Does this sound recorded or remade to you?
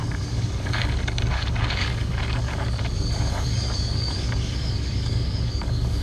remade